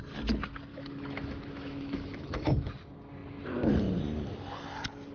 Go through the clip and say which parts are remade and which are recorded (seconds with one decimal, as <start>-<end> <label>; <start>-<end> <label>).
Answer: 0.0-0.7 recorded; 0.7-2.7 remade; 2.7-5.1 recorded